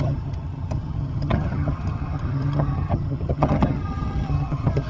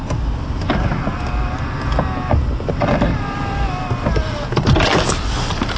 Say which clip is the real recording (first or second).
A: second